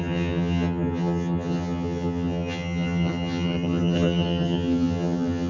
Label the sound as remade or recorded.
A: remade